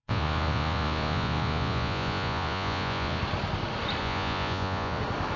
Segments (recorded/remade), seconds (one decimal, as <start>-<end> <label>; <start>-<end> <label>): 0.0-3.2 remade; 3.2-4.0 recorded; 4.0-5.0 remade; 5.0-5.4 recorded